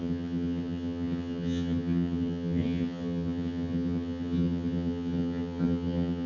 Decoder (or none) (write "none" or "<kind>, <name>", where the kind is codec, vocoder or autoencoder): vocoder, HiFi-GAN